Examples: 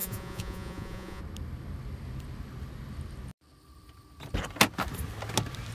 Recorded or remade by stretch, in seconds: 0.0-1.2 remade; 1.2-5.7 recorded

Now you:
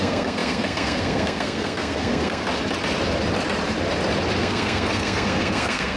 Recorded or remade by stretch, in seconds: 0.0-2.4 remade; 2.4-4.4 recorded; 4.4-6.0 remade

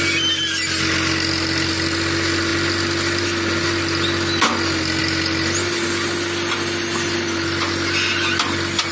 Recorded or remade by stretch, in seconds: 0.0-8.9 recorded

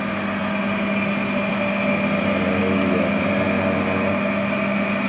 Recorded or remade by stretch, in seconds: 0.0-2.6 recorded; 2.6-3.2 remade; 3.2-5.1 recorded

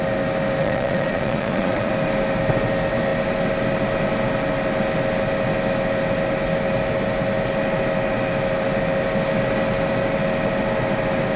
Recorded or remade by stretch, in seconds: 0.0-0.6 recorded; 0.6-1.9 remade; 1.9-11.4 recorded

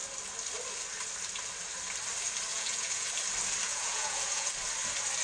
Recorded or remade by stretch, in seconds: 0.0-2.5 recorded; 2.5-3.1 remade; 3.1-3.7 recorded; 3.7-4.5 remade; 4.5-5.2 recorded